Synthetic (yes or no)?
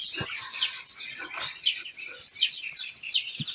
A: no